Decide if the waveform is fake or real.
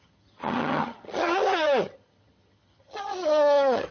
fake